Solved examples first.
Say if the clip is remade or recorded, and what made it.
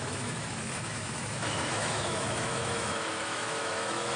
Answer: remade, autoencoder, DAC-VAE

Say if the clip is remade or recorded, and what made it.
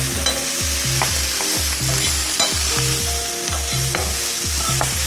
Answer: recorded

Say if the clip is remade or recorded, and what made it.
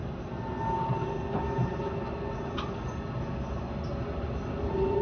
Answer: recorded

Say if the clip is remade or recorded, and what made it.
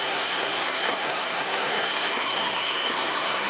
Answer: remade, codec, SNAC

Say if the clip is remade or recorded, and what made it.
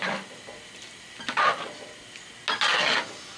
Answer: recorded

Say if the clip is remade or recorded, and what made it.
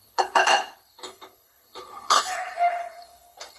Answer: remade, codec, HILCodec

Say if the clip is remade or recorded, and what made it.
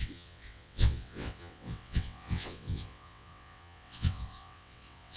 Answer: remade, vocoder, WaveNeXt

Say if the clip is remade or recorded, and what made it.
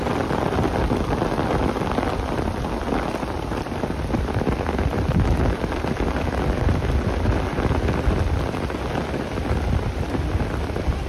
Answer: recorded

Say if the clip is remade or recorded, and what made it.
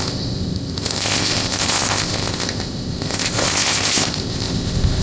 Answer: remade, codec, ZipCodec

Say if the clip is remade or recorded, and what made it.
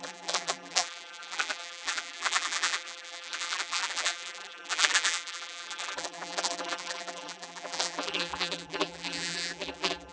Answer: remade, vocoder, BigVGAN v2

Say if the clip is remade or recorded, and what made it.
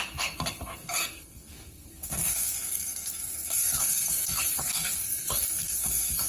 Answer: remade, codec, SNAC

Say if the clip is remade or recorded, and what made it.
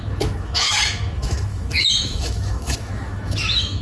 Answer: remade, autoencoder, DAC-VAE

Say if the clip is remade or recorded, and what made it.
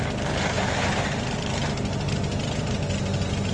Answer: recorded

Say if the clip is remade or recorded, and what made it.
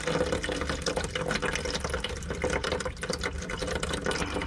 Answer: recorded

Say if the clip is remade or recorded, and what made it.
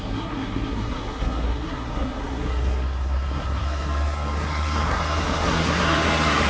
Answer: remade, codec, SNAC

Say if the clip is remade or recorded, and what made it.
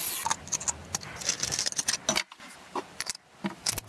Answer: recorded